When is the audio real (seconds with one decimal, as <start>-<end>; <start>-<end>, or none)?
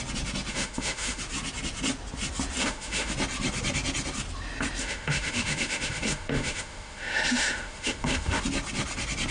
0.0-0.5; 1.2-2.6; 3.1-4.8; 8.4-9.3